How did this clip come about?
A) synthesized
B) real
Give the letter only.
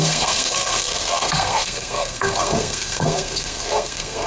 A